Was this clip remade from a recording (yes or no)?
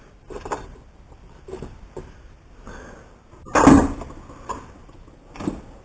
no